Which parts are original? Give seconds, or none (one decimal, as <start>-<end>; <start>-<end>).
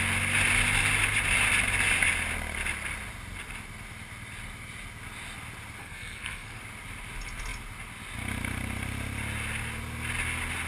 0.0-5.8; 6.6-10.7